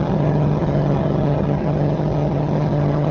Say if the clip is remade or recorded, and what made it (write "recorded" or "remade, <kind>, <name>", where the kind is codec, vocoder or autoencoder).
remade, vocoder, HiFi-GAN